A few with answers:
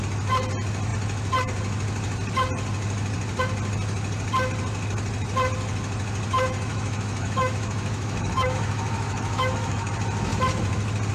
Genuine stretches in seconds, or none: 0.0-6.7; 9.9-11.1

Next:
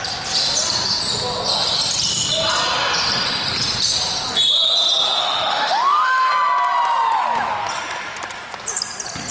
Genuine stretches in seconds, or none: 0.0-5.2; 6.3-9.3